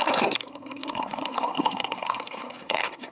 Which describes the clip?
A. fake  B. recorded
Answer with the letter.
A